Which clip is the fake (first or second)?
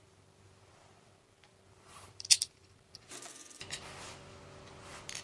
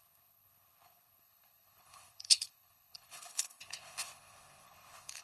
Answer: second